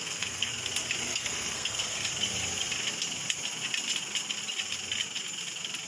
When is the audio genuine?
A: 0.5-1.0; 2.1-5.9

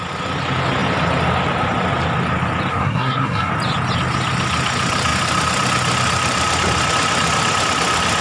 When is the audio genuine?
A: 0.0-2.7; 3.5-8.2

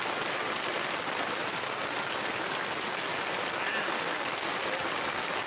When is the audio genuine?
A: 0.0-5.5

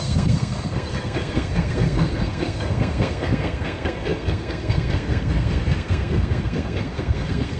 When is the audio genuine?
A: none

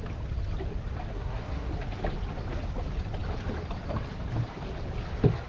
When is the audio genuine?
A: 0.0-1.1; 1.7-5.5